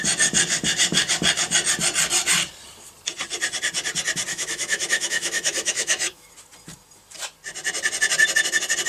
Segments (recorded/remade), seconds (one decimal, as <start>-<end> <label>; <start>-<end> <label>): 0.0-4.3 recorded; 4.3-6.3 remade; 6.3-8.9 recorded